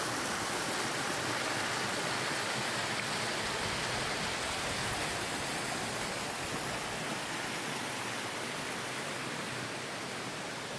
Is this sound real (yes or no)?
yes